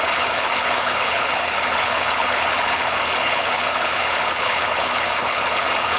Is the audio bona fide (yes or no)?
no